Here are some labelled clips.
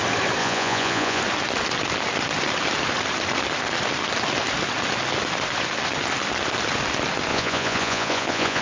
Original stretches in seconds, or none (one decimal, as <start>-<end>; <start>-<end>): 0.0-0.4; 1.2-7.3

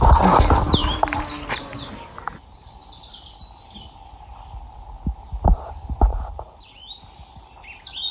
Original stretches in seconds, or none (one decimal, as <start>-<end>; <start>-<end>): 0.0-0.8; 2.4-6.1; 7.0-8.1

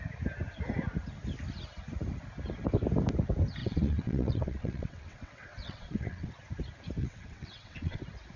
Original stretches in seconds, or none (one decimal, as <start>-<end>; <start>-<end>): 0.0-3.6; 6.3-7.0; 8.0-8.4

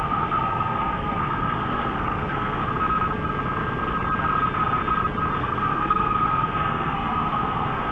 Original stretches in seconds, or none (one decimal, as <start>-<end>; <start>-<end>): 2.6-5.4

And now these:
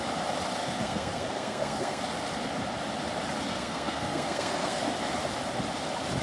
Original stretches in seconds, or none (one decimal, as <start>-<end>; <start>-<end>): 0.0-0.6; 2.0-3.5; 4.8-6.2

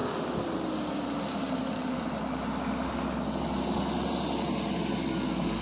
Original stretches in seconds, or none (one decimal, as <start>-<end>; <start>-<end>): 0.0-5.6

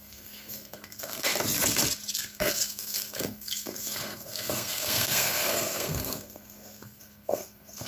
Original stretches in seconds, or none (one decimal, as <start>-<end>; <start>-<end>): 1.3-2.1